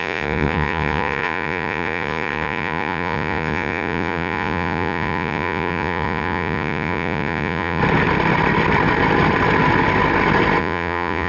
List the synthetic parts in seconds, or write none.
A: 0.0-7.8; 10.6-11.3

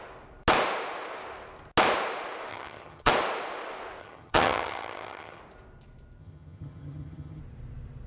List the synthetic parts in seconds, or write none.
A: 2.5-3.1; 4.0-5.4; 6.2-7.4